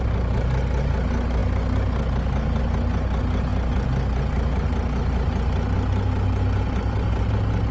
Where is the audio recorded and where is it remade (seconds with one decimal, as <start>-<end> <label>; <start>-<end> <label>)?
0.0-7.7 recorded